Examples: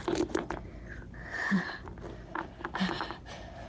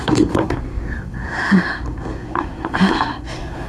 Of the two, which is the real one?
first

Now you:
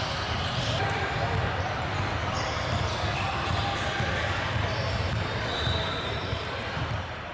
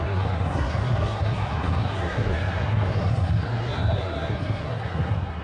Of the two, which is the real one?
first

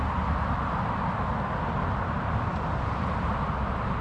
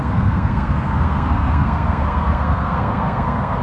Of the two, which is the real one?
first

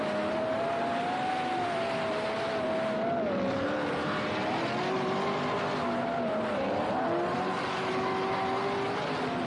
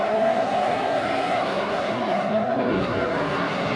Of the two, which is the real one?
first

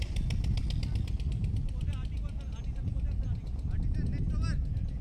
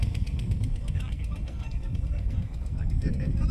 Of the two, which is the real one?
first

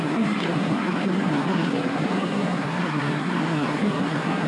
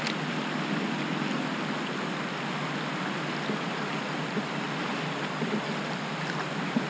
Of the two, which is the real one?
second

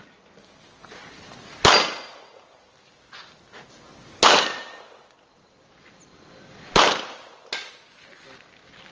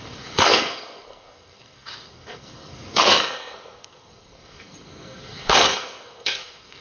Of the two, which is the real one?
first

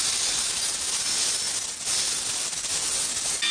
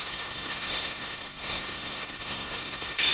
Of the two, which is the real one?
first